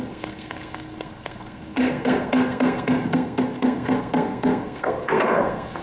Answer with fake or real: fake